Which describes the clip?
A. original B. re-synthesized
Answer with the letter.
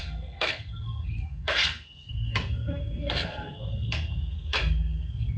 B